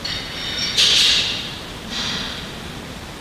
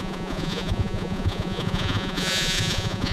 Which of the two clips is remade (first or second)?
second